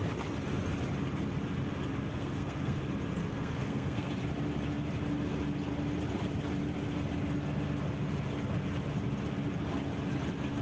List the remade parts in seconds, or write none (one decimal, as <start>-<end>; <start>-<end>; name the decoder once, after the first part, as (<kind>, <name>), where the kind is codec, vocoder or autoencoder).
2.1-2.8 (codec, SNAC); 3.2-4.1